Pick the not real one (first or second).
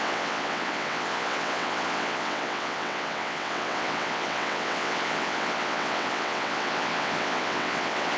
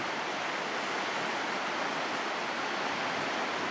first